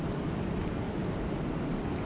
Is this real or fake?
real